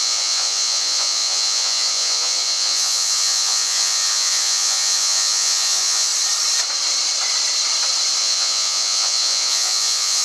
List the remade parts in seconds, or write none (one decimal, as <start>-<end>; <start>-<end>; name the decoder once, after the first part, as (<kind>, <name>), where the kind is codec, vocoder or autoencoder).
0.0-6.1 (vocoder, Vocos); 8.2-10.2